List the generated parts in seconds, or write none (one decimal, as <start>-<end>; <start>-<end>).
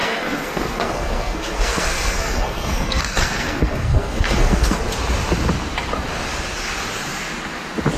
0.0-4.8